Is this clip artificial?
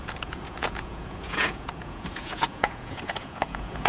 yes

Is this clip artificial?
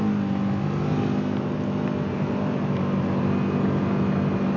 no